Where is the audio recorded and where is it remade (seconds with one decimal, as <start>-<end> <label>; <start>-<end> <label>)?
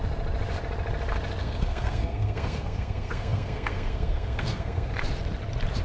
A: 0.0-1.4 recorded; 1.4-4.9 remade; 4.9-5.8 recorded